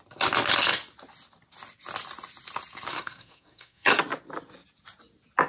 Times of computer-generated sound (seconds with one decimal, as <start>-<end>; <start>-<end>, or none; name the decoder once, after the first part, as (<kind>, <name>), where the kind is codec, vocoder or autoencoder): 2.9-4.0 (codec, SNAC)

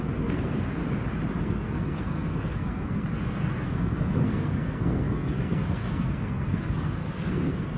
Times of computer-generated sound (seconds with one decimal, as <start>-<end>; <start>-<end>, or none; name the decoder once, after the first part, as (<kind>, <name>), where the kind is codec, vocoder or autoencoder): 0.0-0.8 (codec, SNAC); 1.4-7.8

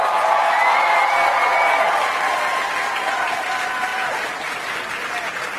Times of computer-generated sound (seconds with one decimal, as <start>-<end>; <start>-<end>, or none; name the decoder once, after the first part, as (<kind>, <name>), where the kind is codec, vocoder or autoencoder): 3.9-4.6 (vocoder, BigVGAN v2)